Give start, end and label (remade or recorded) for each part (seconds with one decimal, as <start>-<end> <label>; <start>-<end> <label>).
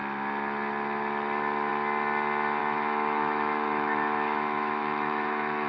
0.0-2.6 recorded; 2.6-5.7 remade